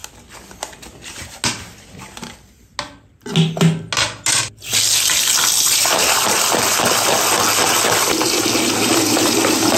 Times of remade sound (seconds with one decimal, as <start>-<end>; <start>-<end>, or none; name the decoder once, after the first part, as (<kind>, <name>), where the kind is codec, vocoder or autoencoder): none